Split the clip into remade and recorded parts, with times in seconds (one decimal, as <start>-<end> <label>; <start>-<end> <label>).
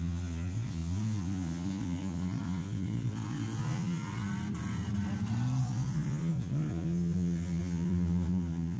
0.0-4.3 remade; 4.3-5.6 recorded; 5.6-8.8 remade